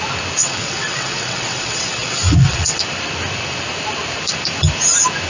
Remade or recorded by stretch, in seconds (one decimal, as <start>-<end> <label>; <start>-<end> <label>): 0.0-0.4 recorded; 0.4-2.8 remade; 2.8-5.3 recorded